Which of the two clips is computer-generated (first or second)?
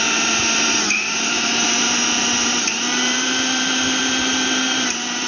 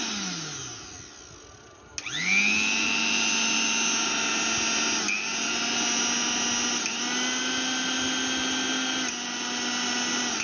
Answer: first